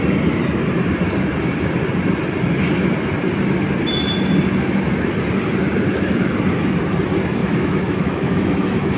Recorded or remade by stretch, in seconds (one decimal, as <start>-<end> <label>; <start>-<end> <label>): 0.0-7.4 recorded; 7.4-9.0 remade